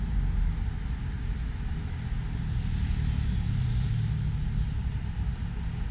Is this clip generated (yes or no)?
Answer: no